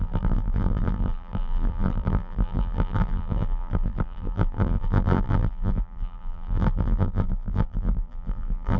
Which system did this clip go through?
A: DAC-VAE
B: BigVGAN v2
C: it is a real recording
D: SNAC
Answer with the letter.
B